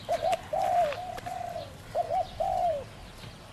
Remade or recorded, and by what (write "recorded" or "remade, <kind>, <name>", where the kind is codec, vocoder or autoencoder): remade, vocoder, BigVGAN v2